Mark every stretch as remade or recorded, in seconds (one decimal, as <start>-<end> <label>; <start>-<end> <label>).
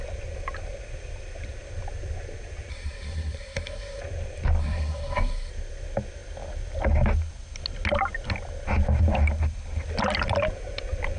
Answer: 0.0-2.7 recorded; 2.7-4.0 remade; 4.0-4.6 recorded; 4.6-5.5 remade; 5.5-11.2 recorded